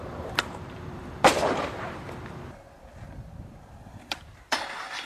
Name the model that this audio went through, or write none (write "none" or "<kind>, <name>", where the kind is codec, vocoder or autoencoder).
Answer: vocoder, BigVGAN v2